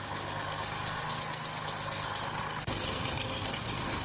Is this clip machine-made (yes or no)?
yes